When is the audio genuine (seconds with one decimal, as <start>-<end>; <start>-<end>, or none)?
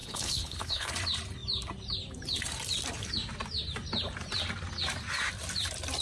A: 0.9-6.0